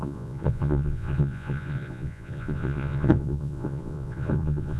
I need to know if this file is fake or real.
fake